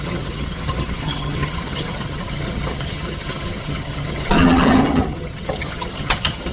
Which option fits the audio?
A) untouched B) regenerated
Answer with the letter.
B